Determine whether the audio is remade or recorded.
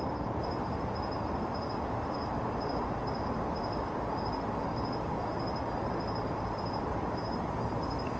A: recorded